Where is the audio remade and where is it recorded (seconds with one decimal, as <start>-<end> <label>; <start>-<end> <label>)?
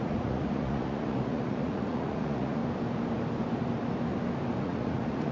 0.0-2.6 remade; 2.6-4.6 recorded; 4.6-5.3 remade